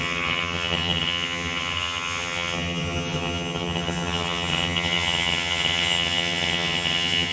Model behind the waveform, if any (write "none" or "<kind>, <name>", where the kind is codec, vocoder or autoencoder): vocoder, HiFi-GAN